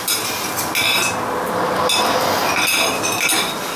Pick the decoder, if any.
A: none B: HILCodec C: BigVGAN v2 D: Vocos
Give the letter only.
A